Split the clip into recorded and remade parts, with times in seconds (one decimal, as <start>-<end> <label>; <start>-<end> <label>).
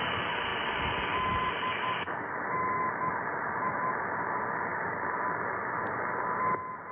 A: 0.0-6.9 recorded